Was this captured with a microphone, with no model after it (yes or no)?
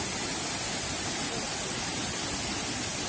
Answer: yes